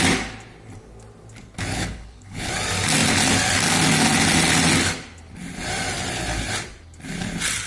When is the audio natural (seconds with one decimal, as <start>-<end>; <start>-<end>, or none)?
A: 0.0-1.7; 2.5-7.7

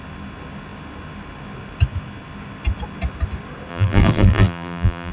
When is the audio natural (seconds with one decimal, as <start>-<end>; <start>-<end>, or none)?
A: 0.0-3.7

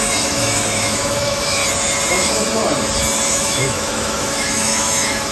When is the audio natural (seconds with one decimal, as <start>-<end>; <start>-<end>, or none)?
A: 1.6-2.1; 2.6-3.3

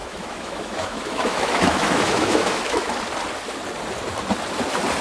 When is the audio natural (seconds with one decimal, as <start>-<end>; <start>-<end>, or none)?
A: 3.0-5.0

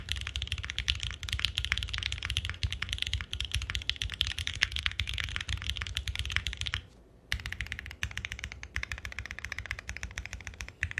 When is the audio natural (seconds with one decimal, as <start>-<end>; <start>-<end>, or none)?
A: 0.0-4.5; 5.3-11.0

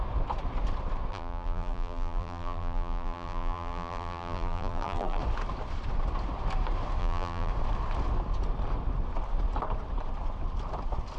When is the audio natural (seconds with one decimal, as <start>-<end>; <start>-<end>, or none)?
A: 0.0-1.1; 5.2-7.0; 7.5-11.2

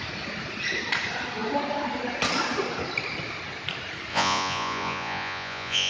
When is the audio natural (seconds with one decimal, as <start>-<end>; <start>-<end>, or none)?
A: 0.0-4.1

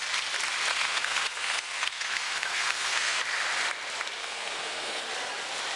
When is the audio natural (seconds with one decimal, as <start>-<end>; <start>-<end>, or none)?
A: 0.0-0.7; 3.2-4.2; 5.0-5.8